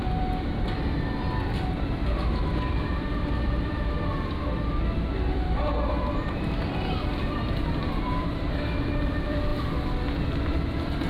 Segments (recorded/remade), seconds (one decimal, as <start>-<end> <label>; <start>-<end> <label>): 0.0-4.1 remade; 4.1-4.7 recorded; 4.7-9.5 remade; 9.5-10.3 recorded; 10.3-11.1 remade